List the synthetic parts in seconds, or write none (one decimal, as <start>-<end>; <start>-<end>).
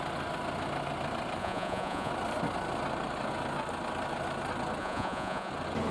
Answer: 1.4-2.1; 4.8-5.5